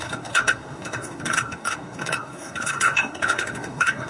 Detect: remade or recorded remade